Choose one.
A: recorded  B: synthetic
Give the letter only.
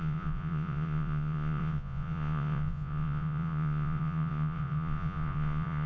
B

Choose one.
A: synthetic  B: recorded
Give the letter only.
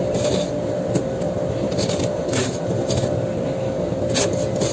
B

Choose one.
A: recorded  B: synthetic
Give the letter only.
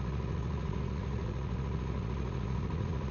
B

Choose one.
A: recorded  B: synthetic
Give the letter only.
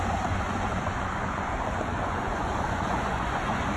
B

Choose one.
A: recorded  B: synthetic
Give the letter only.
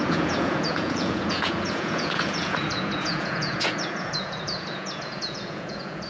B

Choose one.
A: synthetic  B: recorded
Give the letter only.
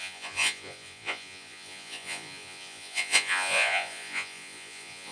A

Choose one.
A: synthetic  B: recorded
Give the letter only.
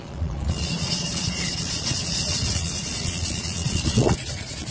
A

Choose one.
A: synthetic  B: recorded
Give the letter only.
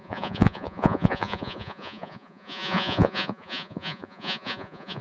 A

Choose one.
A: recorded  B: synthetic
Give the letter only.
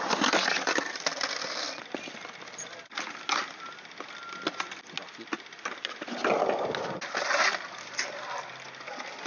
A